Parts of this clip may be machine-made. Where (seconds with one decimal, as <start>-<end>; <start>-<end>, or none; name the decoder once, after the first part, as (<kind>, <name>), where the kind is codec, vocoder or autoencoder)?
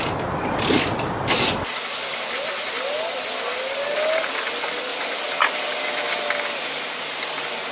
none